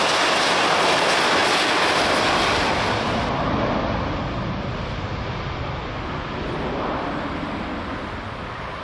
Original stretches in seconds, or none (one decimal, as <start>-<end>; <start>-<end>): 0.0-8.8